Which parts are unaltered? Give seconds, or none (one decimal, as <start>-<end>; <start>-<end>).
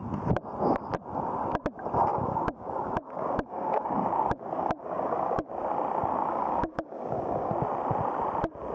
0.0-2.1; 5.5-6.0; 7.5-8.7